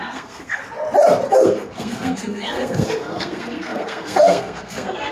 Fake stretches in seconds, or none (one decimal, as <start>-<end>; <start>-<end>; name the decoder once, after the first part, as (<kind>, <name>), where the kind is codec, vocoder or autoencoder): 0.0-0.6 (codec, SNAC); 1.3-5.1